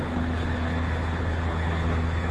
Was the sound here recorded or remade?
remade